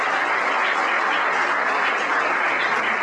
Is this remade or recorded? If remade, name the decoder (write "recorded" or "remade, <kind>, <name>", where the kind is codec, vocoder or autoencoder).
recorded